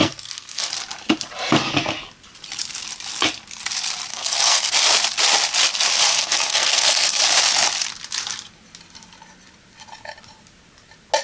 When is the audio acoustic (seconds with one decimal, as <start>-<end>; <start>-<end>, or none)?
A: 0.7-4.1; 4.7-6.1; 7.2-11.2